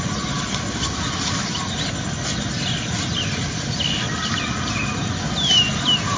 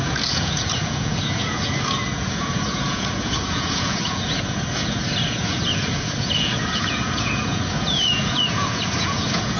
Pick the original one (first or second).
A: first